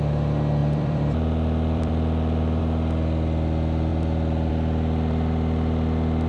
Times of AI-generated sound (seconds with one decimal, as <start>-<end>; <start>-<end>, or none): 0.6-2.6